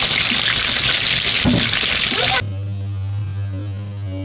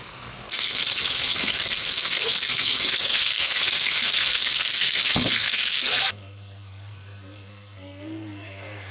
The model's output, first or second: second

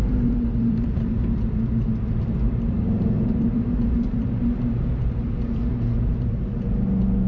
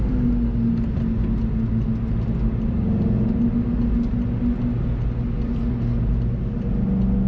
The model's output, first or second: first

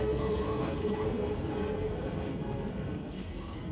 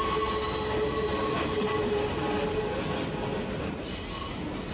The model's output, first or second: first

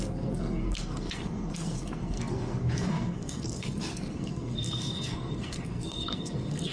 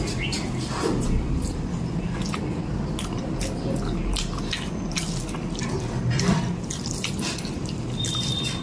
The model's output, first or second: first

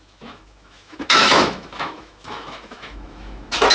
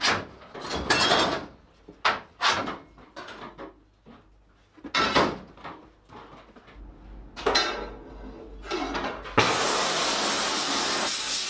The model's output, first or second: first